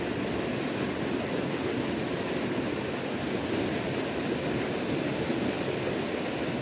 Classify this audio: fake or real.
real